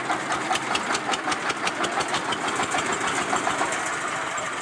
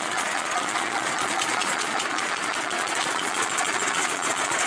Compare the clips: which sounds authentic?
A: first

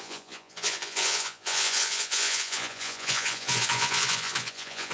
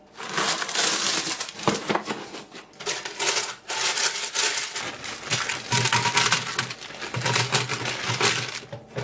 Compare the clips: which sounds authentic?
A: second